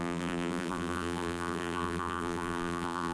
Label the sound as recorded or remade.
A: remade